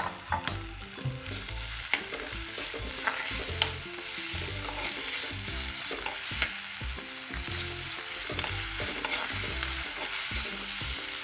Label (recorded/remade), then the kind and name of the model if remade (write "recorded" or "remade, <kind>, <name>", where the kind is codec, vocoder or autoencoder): recorded